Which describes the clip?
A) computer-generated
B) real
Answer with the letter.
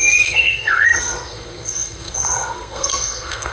A